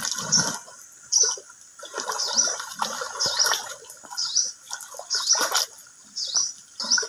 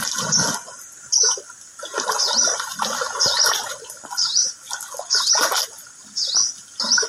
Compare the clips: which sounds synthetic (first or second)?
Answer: first